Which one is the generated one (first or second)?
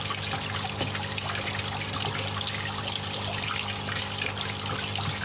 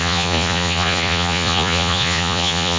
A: second